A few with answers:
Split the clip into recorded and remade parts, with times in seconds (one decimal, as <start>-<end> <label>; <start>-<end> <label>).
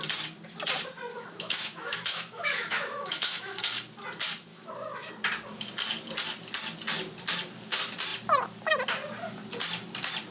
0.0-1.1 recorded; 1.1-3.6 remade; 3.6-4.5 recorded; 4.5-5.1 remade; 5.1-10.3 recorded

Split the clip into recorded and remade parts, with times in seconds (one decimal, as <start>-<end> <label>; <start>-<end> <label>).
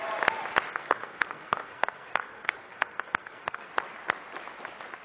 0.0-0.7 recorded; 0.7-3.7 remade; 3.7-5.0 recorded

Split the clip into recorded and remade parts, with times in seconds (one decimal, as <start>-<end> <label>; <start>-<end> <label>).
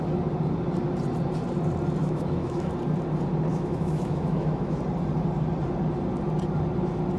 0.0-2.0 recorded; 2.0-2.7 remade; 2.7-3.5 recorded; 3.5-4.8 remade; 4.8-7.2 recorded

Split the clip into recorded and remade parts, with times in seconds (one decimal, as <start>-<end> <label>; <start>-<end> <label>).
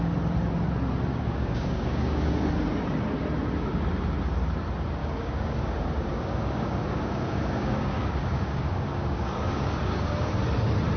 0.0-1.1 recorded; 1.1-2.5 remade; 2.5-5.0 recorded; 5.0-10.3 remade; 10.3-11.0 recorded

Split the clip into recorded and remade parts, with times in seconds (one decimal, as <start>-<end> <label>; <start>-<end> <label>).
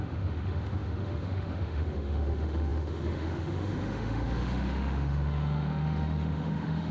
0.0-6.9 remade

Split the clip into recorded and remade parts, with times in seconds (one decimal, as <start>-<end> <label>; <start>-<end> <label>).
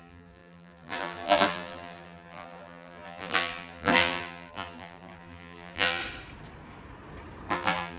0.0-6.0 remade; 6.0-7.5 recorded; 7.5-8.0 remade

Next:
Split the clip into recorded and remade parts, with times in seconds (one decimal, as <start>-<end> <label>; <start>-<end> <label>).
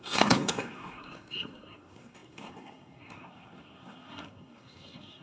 0.0-5.2 remade